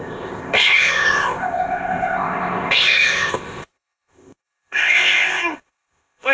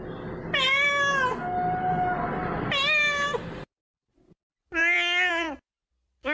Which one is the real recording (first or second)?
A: second